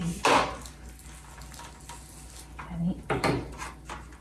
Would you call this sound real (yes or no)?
yes